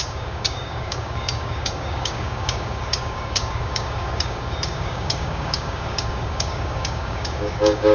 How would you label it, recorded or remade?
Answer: remade